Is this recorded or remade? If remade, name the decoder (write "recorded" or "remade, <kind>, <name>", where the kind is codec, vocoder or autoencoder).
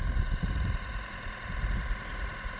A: remade, vocoder, Vocos